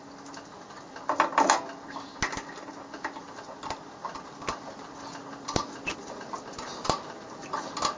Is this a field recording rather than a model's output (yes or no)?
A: yes